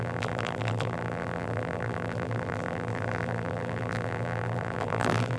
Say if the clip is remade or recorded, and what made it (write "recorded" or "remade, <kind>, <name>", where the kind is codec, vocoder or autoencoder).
remade, vocoder, BigVGAN v2